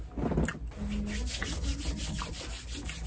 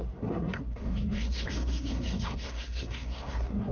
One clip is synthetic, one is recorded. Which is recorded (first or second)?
first